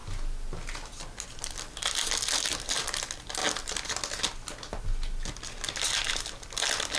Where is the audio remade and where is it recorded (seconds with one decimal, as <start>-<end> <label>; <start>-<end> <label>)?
0.0-7.0 recorded

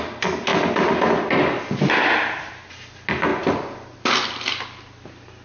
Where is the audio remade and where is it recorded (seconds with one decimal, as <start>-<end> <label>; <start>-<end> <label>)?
0.0-5.4 recorded